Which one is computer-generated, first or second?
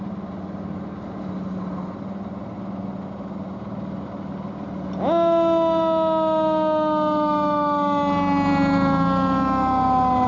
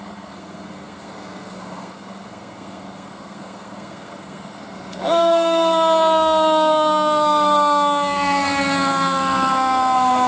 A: second